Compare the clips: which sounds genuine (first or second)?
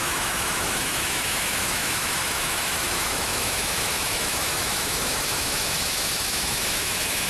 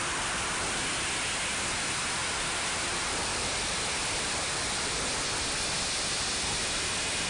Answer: second